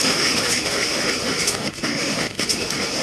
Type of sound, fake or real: fake